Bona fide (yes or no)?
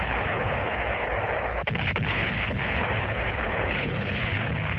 no